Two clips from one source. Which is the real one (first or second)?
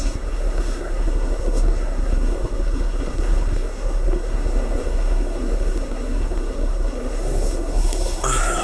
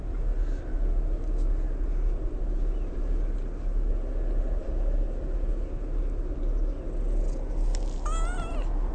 second